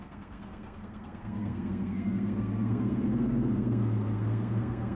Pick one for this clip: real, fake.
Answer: fake